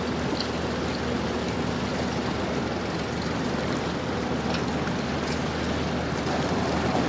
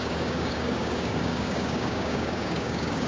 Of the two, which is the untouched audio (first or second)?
first